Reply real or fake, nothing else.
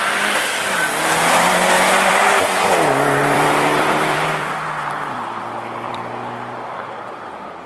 fake